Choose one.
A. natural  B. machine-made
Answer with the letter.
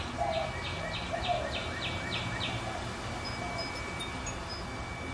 A